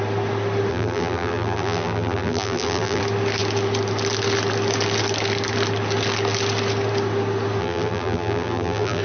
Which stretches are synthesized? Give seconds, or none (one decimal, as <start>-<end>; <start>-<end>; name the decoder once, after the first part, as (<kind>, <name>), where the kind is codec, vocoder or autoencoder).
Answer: 0.7-3.0 (vocoder, BigVGAN v2); 7.6-9.0